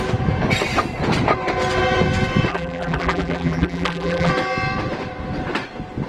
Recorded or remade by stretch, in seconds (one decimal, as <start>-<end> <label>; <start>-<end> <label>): 0.0-2.5 recorded; 2.5-4.3 remade; 4.3-6.1 recorded